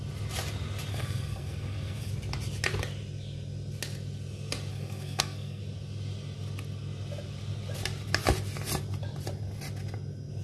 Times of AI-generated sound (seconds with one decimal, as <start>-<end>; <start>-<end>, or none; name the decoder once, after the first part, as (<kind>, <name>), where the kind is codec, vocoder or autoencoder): 0.9-2.1 (codec, SNAC); 4.7-5.6